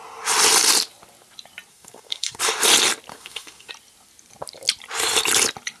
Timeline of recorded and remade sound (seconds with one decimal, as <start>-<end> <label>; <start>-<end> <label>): 0.0-1.7 recorded; 1.7-2.4 remade; 2.4-3.1 recorded; 3.1-3.7 remade; 3.7-5.8 recorded